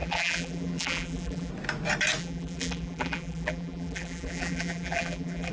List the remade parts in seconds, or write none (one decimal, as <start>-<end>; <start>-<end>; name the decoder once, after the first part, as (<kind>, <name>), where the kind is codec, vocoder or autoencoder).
0.0-1.5 (vocoder, BigVGAN v2); 2.2-5.5